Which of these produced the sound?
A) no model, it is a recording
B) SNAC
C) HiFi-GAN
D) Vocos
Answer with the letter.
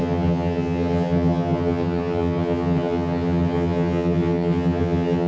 C